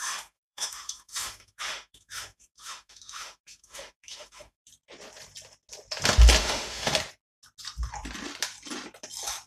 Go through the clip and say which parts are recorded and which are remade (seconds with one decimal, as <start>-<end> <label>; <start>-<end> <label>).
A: 0.0-4.7 remade; 4.7-6.4 recorded; 6.4-6.9 remade; 6.9-9.5 recorded

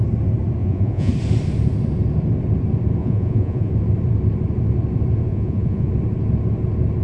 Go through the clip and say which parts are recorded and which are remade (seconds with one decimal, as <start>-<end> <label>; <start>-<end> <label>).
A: 0.0-0.6 recorded; 0.6-1.1 remade; 1.1-3.0 recorded; 3.0-3.7 remade; 3.7-5.3 recorded; 5.3-5.9 remade; 5.9-7.0 recorded